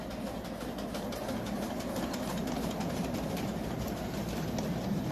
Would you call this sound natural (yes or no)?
yes